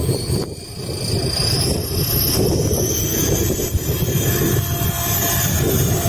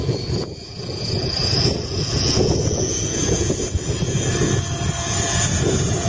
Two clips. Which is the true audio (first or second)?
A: first